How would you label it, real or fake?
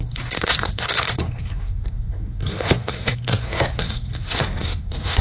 fake